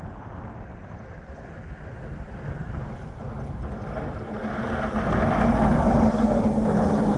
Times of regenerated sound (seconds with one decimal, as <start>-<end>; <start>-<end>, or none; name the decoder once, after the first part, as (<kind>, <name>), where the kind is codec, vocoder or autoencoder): 0.7-2.5 (vocoder, BigVGAN v2)